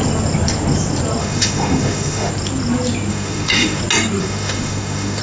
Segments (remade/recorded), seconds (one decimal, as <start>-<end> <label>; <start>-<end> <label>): 0.0-1.2 recorded; 1.2-2.3 remade; 2.3-3.1 recorded; 3.1-3.8 remade; 3.8-4.2 recorded; 4.2-5.2 remade